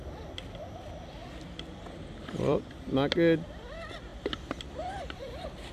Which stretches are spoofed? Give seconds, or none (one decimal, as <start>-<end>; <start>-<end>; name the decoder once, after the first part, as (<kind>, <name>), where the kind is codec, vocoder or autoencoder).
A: 1.2-2.7 (vocoder, BigVGAN v2); 4.1-5.7